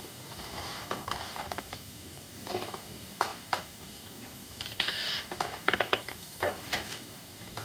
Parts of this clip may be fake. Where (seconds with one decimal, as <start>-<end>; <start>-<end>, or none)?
0.0-7.6